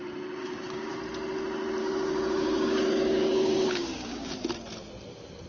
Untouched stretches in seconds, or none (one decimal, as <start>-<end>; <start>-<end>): 0.0-0.4; 0.9-1.8; 4.3-5.5